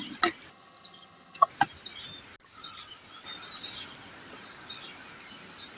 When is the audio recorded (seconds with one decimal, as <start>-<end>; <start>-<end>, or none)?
0.0-0.5; 1.5-5.8